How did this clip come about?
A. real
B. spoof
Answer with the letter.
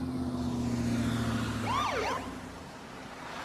A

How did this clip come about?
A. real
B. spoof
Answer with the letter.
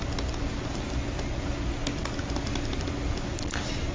A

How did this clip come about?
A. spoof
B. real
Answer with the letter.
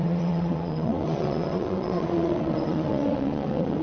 A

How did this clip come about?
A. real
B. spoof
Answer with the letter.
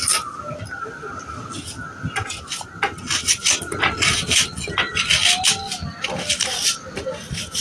A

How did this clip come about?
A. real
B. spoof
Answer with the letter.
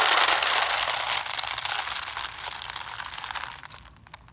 A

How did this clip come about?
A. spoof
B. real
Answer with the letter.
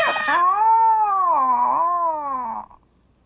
B